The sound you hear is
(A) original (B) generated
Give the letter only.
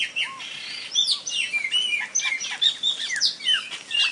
A